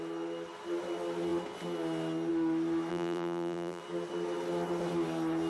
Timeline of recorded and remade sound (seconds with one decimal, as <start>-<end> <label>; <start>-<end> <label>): 0.0-2.9 recorded; 2.9-3.8 remade; 3.8-5.5 recorded